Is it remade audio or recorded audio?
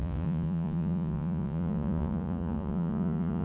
remade